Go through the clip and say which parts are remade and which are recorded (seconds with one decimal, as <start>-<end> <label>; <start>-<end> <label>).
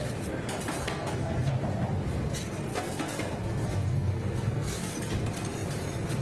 0.0-0.8 recorded; 0.8-1.5 remade; 1.5-2.7 recorded; 2.7-4.9 remade; 4.9-6.2 recorded